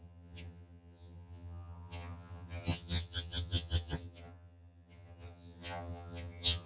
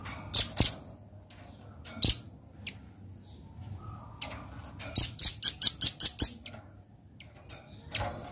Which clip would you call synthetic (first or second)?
first